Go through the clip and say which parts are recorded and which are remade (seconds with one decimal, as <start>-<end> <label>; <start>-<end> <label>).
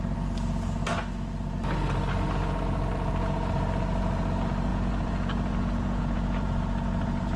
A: 0.0-4.7 recorded; 4.7-7.4 remade